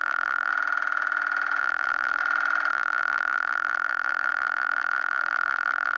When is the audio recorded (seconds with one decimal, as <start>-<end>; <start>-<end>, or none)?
0.5-1.6; 2.2-2.7